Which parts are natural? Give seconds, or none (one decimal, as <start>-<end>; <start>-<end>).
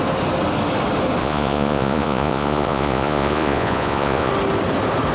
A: 0.0-1.2; 4.3-5.1